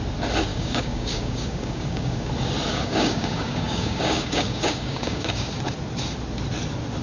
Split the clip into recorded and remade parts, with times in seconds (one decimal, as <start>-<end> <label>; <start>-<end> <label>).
0.0-0.5 recorded; 0.5-2.3 remade; 2.3-2.7 recorded; 2.7-5.5 remade; 5.5-7.0 recorded